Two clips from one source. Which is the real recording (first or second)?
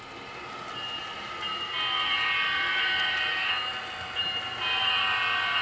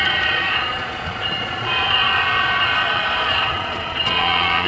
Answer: first